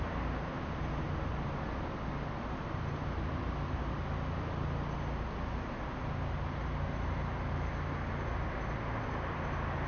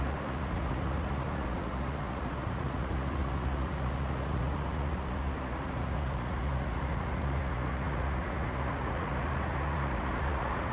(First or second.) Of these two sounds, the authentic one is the first